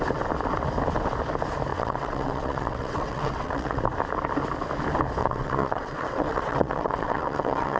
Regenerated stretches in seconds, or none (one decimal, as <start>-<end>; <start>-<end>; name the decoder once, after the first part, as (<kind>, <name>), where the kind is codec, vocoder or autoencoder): 1.7-3.8 (vocoder, WaveNeXt); 5.2-7.8